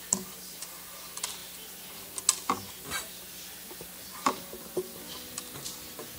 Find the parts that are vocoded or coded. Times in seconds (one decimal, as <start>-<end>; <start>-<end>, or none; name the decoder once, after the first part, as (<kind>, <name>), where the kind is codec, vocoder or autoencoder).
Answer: none